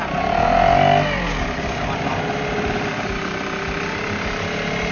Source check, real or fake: real